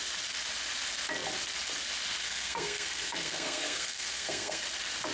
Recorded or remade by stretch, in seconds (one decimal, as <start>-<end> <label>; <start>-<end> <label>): 0.0-2.2 recorded; 2.2-4.6 remade; 4.6-5.1 recorded